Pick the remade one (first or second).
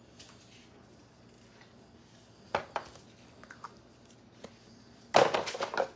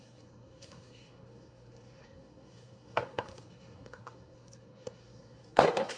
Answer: second